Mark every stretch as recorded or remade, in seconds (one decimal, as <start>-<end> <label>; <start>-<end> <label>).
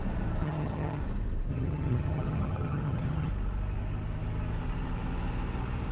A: 0.0-0.4 recorded; 0.4-1.0 remade; 1.0-1.5 recorded; 1.5-3.3 remade; 3.3-5.9 recorded